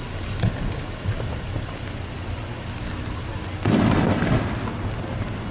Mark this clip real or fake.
real